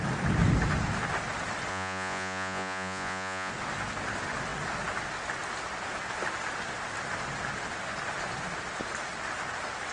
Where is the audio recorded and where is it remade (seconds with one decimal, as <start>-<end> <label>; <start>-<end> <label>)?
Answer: 0.0-1.7 recorded; 1.7-3.5 remade; 3.5-9.9 recorded